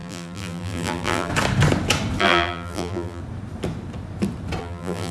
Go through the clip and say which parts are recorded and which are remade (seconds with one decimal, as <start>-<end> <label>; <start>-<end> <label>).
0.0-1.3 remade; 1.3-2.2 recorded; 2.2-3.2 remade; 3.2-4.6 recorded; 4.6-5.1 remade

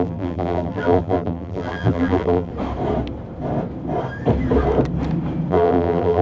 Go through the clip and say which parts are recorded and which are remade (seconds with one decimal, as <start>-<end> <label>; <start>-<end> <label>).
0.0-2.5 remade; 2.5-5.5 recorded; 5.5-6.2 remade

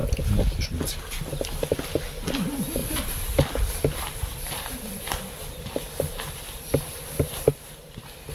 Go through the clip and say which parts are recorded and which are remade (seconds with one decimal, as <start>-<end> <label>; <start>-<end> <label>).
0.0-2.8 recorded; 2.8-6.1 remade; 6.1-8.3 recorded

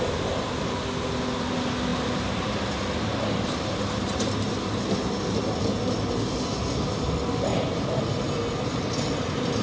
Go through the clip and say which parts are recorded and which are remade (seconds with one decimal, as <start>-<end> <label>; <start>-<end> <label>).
0.0-1.9 recorded; 1.9-4.3 remade; 4.3-9.6 recorded